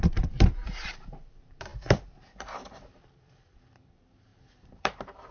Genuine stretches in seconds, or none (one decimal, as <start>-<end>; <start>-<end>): none